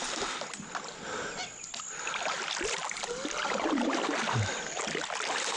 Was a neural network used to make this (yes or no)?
no